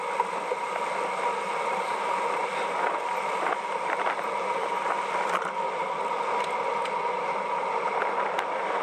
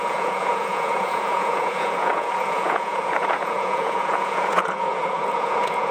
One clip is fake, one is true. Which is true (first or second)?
first